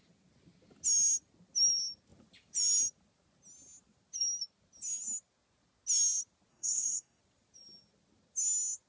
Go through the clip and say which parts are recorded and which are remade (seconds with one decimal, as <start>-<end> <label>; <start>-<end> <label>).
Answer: 0.0-6.5 recorded; 6.5-7.2 remade; 7.2-8.9 recorded